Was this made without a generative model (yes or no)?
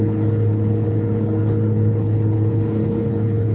no